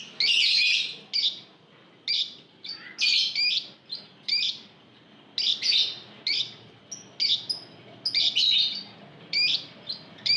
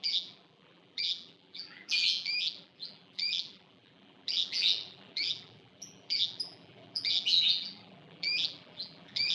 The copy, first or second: second